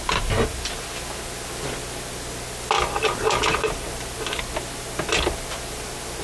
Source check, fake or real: real